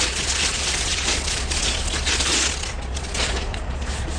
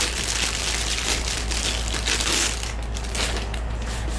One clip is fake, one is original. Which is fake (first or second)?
first